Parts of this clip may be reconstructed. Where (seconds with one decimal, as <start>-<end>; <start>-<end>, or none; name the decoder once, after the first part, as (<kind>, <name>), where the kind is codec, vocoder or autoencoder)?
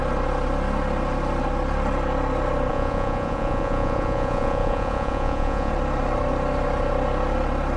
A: 2.7-5.7 (vocoder, Vocos)